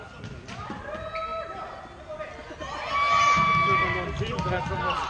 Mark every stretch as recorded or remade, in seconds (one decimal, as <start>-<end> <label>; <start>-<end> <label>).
0.0-5.1 recorded